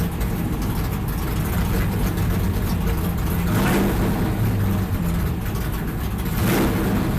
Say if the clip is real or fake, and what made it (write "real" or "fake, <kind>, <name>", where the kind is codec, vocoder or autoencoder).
real